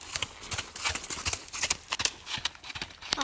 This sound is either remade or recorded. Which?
recorded